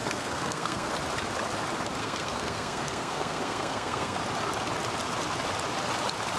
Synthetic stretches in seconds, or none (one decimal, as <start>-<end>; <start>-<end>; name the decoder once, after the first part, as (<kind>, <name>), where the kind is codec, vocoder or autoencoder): 0.0-0.9 (codec, SNAC); 2.0-4.2